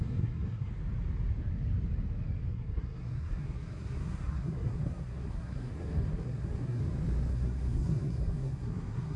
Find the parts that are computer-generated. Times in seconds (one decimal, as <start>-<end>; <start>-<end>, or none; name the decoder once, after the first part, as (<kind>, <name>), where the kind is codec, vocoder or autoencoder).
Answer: 0.0-0.7 (codec, SNAC); 2.5-6.8; 7.3-9.2